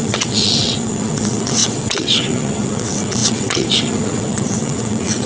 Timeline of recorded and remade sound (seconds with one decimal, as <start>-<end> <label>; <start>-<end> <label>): 0.0-5.3 remade